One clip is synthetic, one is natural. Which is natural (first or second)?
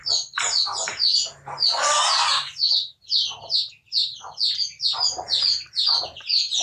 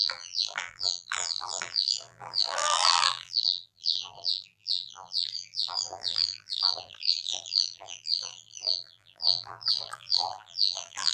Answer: first